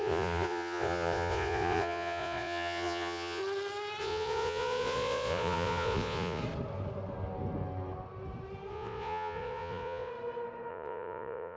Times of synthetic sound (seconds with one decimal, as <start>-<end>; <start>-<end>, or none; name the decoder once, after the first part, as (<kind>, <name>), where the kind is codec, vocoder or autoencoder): 0.0-3.4 (vocoder, Vocos); 4.0-6.4; 8.7-10.1; 10.7-11.6